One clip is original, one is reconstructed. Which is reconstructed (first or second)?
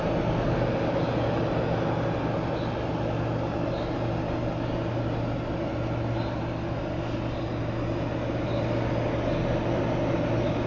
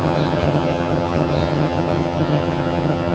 second